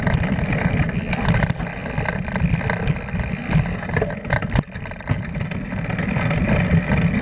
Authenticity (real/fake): real